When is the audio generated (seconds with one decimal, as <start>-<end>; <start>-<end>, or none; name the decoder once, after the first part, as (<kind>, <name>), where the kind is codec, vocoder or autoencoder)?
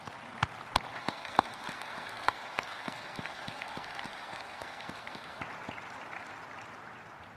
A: 1.0-5.4 (codec, SNAC)